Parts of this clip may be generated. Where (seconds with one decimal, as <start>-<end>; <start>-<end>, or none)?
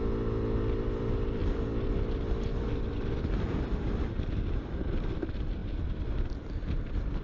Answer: none